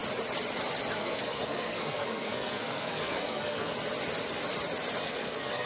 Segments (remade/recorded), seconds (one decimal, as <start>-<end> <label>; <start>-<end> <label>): 0.0-0.9 recorded; 0.9-3.7 remade; 3.7-5.0 recorded; 5.0-5.7 remade

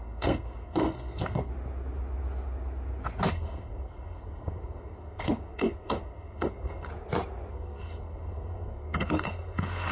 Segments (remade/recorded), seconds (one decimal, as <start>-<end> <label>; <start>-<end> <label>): 0.0-1.5 remade; 1.5-3.3 recorded; 3.3-6.9 remade; 6.9-7.5 recorded; 7.5-9.9 remade

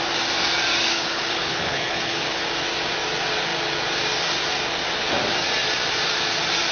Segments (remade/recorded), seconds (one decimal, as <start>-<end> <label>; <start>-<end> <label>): 0.0-0.8 recorded; 0.8-2.4 remade; 2.4-6.7 recorded

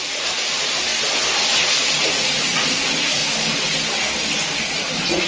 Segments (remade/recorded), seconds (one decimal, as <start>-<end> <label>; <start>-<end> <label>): 0.0-0.9 remade; 0.9-1.6 recorded; 1.6-3.2 remade; 3.2-4.7 recorded; 4.7-5.3 remade

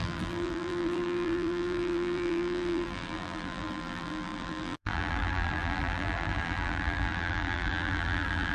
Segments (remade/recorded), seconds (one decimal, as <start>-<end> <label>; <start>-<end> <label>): 0.0-8.5 remade

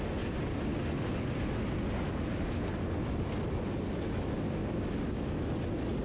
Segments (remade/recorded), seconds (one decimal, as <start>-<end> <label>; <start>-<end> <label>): 0.0-6.0 recorded

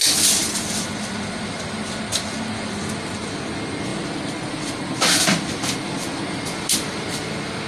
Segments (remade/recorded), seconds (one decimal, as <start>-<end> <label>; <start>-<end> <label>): 0.0-0.4 recorded; 0.4-1.6 remade; 1.6-3.9 recorded; 3.9-7.3 remade; 7.3-7.7 recorded

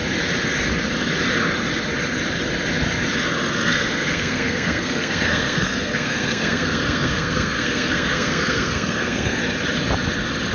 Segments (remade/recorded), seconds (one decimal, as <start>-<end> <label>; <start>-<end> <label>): 0.0-3.5 recorded; 3.5-9.4 remade; 9.4-10.5 recorded